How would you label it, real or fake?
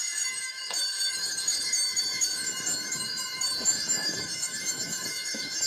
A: fake